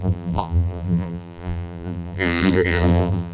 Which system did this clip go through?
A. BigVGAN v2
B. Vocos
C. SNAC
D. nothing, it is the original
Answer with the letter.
A